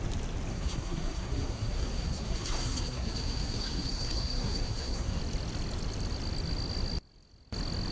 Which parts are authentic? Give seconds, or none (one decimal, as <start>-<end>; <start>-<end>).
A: 0.0-0.5; 5.2-7.9